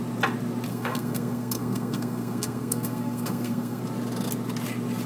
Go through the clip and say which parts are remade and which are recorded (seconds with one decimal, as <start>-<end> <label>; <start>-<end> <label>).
0.0-0.7 recorded; 0.7-3.8 remade; 3.8-5.1 recorded